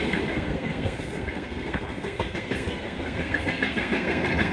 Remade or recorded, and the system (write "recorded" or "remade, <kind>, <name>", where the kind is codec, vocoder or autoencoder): remade, codec, SNAC